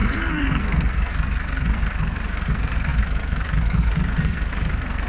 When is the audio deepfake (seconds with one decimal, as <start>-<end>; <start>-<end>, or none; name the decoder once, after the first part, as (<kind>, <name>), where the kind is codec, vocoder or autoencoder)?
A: 0.0-5.1 (codec, SNAC)